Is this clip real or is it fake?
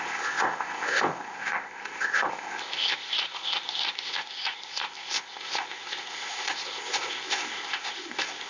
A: fake